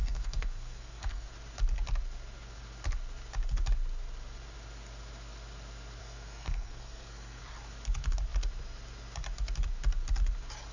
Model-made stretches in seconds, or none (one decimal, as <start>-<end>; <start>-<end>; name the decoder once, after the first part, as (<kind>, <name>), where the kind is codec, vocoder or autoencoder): 0.0-1.3 (codec, SNAC); 6.0-7.4